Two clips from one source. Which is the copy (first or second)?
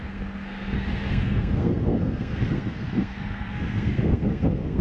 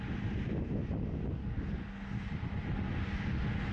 first